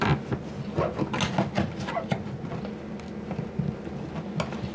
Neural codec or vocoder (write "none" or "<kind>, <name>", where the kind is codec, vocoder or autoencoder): none